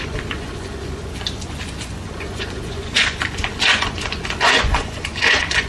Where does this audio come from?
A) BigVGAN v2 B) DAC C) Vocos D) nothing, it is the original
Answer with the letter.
C